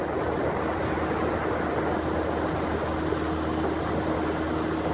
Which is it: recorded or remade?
recorded